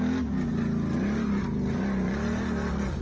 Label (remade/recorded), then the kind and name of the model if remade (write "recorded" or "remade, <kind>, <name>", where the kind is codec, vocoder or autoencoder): recorded